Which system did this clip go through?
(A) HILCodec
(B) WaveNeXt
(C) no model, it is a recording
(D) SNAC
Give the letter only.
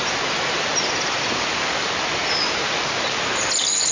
C